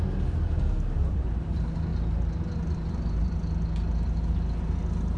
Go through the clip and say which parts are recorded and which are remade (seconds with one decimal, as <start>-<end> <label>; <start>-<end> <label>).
0.0-5.2 recorded